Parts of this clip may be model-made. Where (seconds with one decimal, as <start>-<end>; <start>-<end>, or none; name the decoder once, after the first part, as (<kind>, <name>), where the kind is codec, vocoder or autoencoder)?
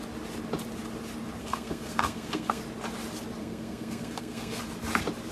1.4-2.6 (codec, SNAC); 3.4-4.6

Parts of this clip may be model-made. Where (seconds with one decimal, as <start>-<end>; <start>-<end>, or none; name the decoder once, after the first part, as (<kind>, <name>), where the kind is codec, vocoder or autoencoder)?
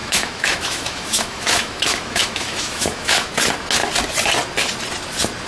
0.0-3.3 (autoencoder, DAC-VAE)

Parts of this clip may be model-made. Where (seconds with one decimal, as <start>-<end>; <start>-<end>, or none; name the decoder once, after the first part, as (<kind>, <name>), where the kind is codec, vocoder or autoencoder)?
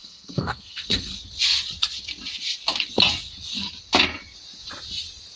0.0-1.1 (codec, SNAC)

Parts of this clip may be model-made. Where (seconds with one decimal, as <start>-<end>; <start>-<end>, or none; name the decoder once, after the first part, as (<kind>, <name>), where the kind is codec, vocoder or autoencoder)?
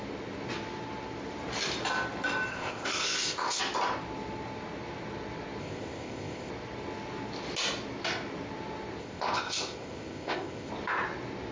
2.5-3.6 (codec, ZipCodec); 5.6-6.5; 9.0-10.7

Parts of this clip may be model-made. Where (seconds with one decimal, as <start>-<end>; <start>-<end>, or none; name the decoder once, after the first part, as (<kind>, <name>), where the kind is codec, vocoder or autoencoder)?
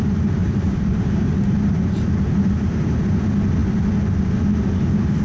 0.4-3.0 (vocoder, BigVGAN v2)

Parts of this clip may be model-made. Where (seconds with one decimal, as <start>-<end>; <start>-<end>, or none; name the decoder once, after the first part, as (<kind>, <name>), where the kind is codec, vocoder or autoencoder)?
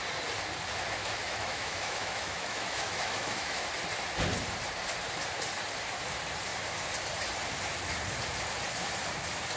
1.0-3.7 (autoencoder, DAC-VAE)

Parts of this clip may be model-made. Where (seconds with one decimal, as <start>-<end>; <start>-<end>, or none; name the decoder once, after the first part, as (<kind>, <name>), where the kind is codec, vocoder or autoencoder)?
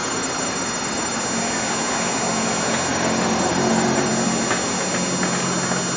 0.0-1.2 (vocoder, BigVGAN v2); 2.9-4.1